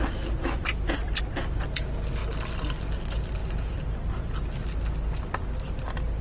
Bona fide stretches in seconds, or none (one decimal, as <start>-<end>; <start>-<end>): 0.0-0.7; 1.3-3.4; 4.4-6.2

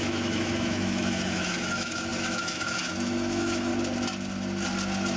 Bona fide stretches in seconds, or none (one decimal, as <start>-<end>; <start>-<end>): 3.7-5.2

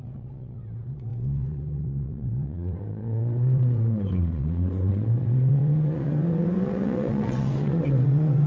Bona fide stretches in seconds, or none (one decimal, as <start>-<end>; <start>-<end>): none

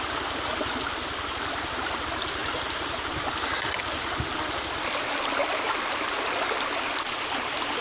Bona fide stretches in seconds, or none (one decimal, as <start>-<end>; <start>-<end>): 0.0-7.8

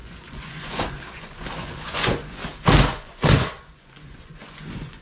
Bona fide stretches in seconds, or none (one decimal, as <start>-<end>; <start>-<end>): 2.4-2.9

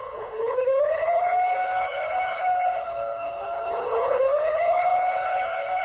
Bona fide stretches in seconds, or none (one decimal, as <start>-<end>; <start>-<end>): none

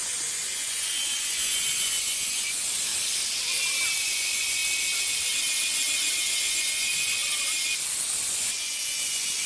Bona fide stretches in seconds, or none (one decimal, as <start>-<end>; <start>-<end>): 2.9-4.0; 4.6-6.1; 7.2-8.3

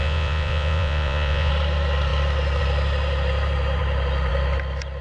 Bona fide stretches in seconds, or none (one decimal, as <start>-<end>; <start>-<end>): 1.5-5.0